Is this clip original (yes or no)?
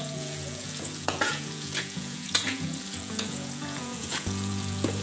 no